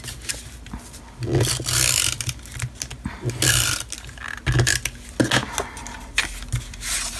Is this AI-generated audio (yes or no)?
no